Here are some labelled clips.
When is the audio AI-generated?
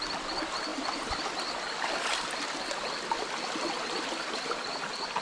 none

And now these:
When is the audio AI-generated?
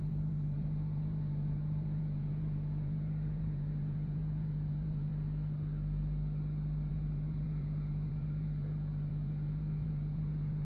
0.0-5.1; 6.9-10.6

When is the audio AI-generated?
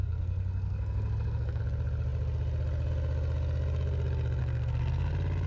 0.0-1.6; 4.4-5.1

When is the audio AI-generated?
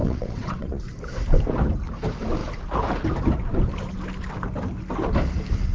0.0-0.8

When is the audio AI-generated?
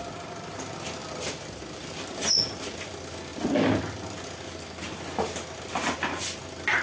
none